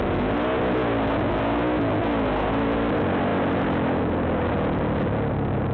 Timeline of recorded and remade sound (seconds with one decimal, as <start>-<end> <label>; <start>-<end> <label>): 0.0-5.7 recorded